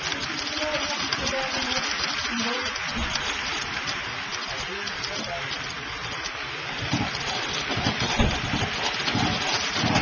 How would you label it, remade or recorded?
recorded